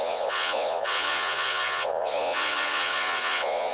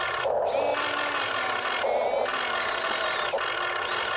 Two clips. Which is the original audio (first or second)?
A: second